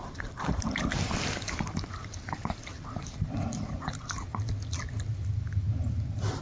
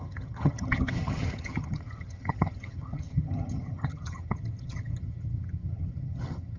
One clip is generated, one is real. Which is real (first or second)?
first